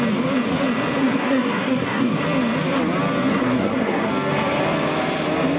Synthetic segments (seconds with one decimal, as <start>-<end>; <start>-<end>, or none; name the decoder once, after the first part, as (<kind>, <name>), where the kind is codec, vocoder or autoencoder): 1.0-2.2 (codec, SNAC); 3.3-4.1